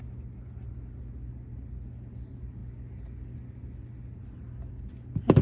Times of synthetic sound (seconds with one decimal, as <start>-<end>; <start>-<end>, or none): none